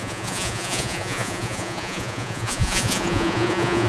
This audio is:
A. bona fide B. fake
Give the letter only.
B